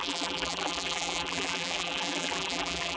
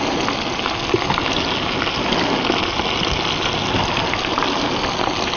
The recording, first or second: second